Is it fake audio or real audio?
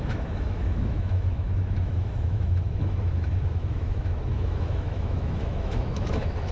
fake